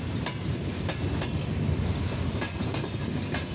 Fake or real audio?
real